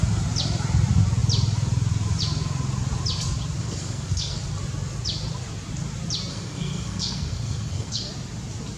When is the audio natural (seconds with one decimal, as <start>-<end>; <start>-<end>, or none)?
0.0-3.6; 4.4-6.3; 8.1-8.8